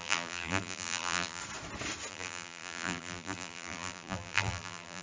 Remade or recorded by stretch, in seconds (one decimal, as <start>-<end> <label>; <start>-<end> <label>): 0.0-1.4 remade; 1.4-2.1 recorded; 2.1-5.0 remade